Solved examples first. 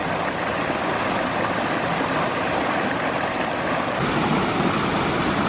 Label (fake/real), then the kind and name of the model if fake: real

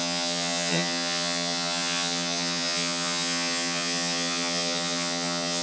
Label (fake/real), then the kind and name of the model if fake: fake, vocoder, HiFi-GAN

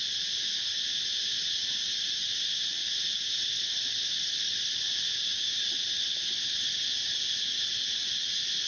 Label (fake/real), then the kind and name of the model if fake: real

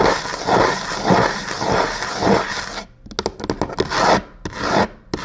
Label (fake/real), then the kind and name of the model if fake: real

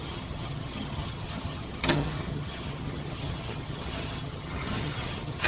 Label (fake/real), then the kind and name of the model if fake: fake, vocoder, HiFi-GAN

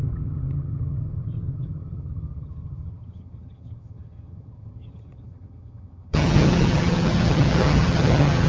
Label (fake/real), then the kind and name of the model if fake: fake, vocoder, HiFi-GAN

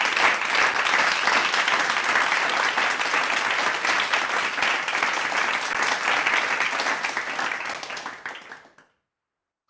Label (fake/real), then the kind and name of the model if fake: real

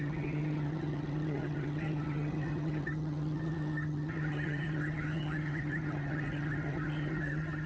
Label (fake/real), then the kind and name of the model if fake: fake, vocoder, HiFi-GAN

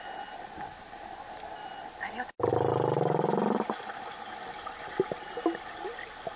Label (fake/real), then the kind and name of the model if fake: real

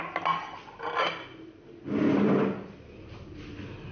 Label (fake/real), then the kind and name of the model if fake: real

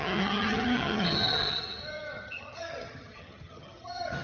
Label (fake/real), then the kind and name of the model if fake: fake, vocoder, HiFi-GAN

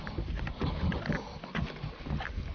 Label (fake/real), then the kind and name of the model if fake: real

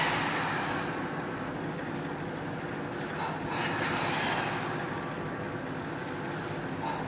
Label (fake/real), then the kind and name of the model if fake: real